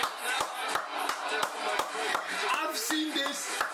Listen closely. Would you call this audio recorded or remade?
remade